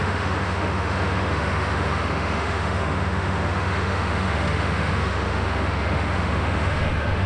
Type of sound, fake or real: fake